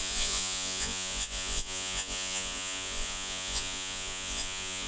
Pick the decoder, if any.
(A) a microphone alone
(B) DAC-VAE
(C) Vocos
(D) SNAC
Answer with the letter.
C